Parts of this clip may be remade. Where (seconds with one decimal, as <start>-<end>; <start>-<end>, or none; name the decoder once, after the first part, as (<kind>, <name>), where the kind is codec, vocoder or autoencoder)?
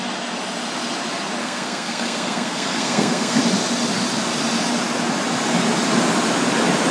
1.4-3.4 (codec, SNAC)